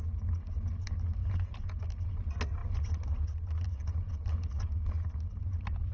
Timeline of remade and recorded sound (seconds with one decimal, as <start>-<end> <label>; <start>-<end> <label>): 0.0-1.2 recorded; 1.2-1.8 remade; 1.8-5.9 recorded